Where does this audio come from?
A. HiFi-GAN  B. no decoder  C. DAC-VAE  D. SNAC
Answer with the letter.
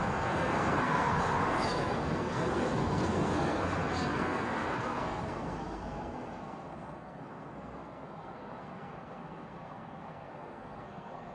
D